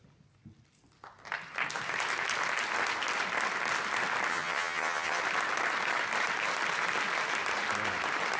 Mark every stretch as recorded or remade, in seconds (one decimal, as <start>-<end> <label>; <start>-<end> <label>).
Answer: 0.0-4.3 recorded; 4.3-5.2 remade; 5.2-8.4 recorded